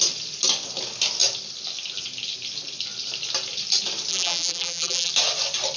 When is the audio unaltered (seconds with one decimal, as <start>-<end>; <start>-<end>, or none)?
0.0-4.1; 5.1-5.8